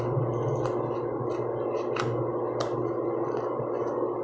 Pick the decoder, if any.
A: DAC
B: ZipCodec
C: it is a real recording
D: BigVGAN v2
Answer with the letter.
C